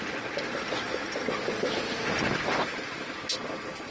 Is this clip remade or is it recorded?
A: recorded